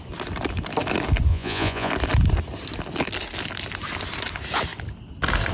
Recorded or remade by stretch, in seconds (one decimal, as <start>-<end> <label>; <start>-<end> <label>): 0.0-1.3 recorded; 1.3-1.9 remade; 1.9-5.5 recorded